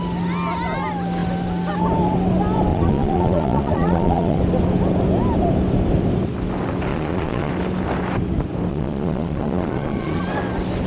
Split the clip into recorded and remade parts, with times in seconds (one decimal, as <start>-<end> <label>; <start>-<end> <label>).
0.0-2.7 recorded; 2.7-4.4 remade; 4.4-6.9 recorded; 6.9-7.5 remade; 7.5-8.7 recorded; 8.7-10.2 remade; 10.2-10.9 recorded